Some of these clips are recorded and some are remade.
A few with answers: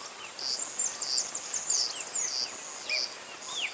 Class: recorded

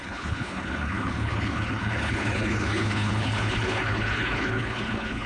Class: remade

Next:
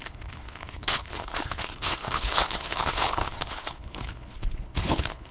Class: remade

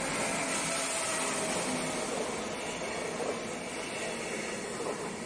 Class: recorded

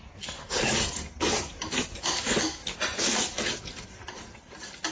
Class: recorded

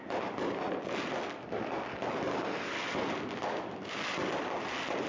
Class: recorded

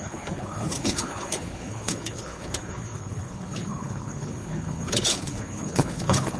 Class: remade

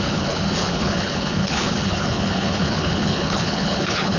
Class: remade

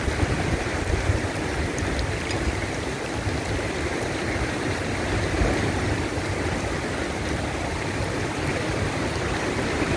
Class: recorded